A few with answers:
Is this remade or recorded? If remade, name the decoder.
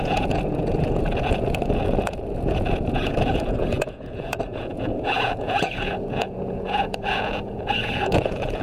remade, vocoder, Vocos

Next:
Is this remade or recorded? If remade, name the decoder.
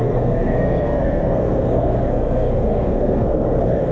remade, codec, SNAC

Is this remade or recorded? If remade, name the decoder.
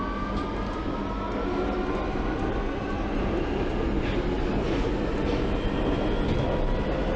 recorded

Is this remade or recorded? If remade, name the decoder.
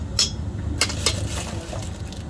recorded